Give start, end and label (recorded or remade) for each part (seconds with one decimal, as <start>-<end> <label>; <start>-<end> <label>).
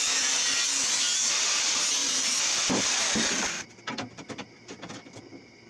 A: 0.0-2.0 recorded; 2.0-5.7 remade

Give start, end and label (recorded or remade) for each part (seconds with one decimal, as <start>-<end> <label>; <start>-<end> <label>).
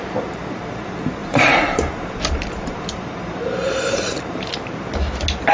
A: 0.0-1.2 recorded; 1.2-4.5 remade; 4.5-5.5 recorded